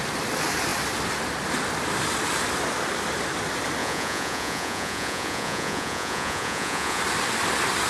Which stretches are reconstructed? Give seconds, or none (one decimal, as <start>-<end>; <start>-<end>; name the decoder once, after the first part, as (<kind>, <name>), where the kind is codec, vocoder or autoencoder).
3.8-7.0 (vocoder, Vocos)